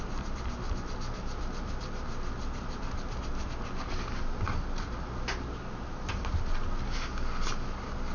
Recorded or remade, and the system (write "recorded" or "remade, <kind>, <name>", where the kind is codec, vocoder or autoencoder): recorded